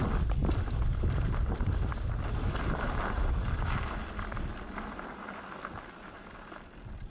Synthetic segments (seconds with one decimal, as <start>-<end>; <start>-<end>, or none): none